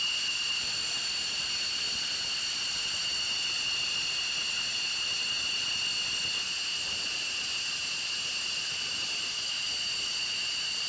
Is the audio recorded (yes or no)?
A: yes